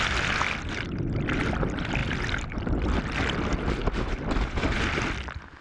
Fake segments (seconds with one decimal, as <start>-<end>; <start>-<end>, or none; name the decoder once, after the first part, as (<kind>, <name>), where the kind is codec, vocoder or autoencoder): 3.8-4.7 (vocoder, BigVGAN v2)